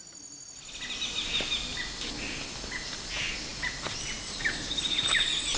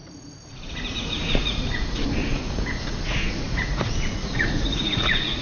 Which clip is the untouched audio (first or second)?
first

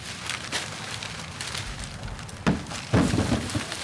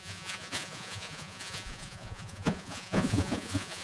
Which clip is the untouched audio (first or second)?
first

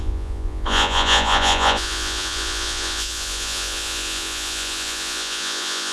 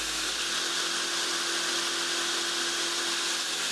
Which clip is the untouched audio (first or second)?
second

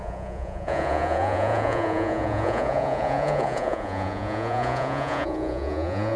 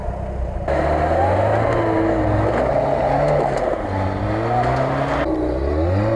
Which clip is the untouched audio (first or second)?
second